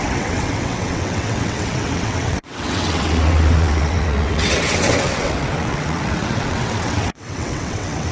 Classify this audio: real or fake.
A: fake